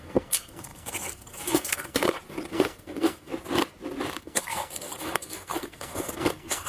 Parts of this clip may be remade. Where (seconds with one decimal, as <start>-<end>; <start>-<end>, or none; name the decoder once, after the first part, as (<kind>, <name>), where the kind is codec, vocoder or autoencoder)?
0.0-2.0 (codec, SNAC); 2.5-3.3; 4.2-6.7